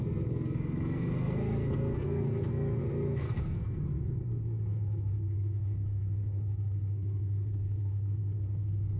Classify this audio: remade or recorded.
remade